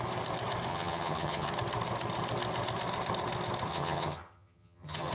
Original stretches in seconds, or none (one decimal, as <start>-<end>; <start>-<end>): 0.0-0.7; 1.5-3.7